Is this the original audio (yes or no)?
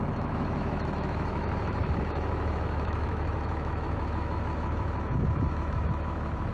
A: no